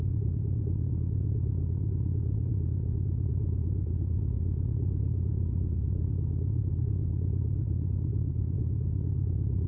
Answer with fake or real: fake